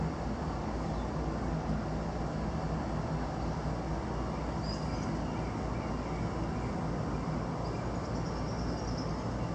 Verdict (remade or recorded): recorded